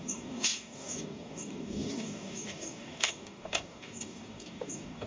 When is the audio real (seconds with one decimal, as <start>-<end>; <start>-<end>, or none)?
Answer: none